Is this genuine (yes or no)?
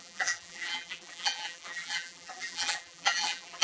no